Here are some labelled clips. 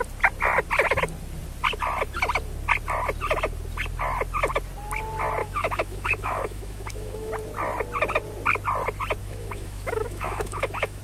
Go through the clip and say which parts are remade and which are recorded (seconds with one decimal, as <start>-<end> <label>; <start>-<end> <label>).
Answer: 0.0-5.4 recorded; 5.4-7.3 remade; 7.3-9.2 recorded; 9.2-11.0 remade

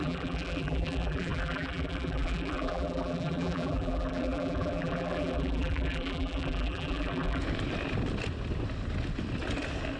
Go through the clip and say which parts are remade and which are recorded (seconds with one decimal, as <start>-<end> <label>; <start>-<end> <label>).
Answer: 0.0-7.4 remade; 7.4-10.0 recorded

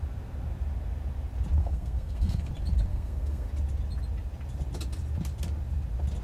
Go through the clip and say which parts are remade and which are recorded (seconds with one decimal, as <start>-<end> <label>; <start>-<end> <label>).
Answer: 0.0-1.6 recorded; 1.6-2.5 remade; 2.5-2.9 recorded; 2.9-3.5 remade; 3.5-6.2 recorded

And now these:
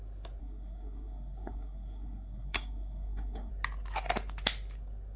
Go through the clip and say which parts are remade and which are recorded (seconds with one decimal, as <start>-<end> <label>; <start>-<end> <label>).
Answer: 0.0-0.4 recorded; 0.4-3.5 remade; 3.5-5.2 recorded